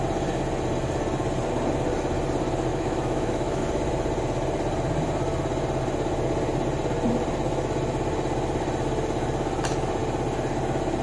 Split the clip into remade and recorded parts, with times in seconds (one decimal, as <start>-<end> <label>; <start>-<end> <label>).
0.0-2.7 recorded; 2.7-3.6 remade; 3.6-11.0 recorded